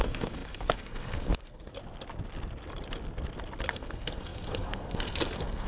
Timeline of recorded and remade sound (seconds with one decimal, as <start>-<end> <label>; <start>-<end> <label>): 0.0-1.7 remade; 1.7-3.7 recorded; 3.7-5.7 remade